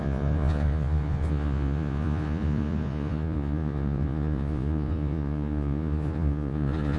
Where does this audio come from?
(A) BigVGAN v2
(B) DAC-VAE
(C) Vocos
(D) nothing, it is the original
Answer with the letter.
C